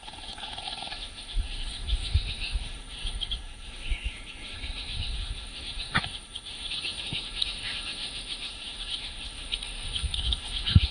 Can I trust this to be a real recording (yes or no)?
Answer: no